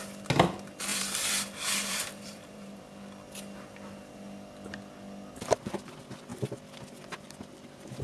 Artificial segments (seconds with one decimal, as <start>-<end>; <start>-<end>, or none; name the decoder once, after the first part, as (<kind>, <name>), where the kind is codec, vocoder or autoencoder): 0.9-2.8 (vocoder, BigVGAN v2)